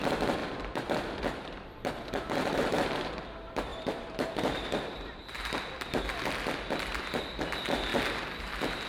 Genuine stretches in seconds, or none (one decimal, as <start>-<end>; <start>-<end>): 0.0-0.4; 3.1-3.7; 5.2-8.9